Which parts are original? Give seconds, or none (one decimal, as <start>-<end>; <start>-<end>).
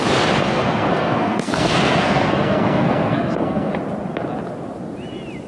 0.0-0.4; 3.7-5.5